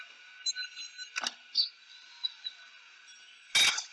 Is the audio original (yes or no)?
yes